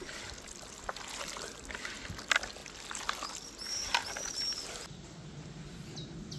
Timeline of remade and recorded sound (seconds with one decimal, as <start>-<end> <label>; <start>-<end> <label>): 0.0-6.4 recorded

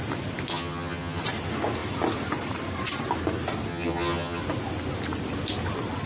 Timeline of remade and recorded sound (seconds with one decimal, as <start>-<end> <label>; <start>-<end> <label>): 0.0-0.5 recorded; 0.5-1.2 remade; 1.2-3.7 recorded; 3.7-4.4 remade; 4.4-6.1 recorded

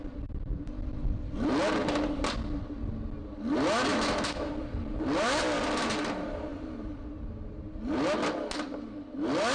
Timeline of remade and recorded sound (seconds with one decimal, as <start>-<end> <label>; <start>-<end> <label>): 0.0-3.9 recorded; 3.9-4.5 remade; 4.5-9.5 recorded

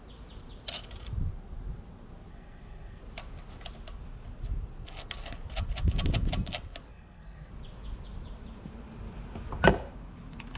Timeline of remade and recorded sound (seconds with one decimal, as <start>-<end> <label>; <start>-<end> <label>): 0.0-2.3 recorded; 2.3-3.0 remade; 3.0-6.9 recorded; 6.9-7.5 remade; 7.5-10.6 recorded